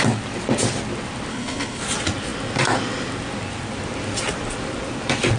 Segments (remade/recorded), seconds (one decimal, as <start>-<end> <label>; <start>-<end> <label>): 0.0-1.3 recorded; 1.3-1.8 remade; 1.8-5.4 recorded